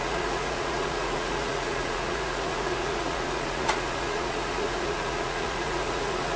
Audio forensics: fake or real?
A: fake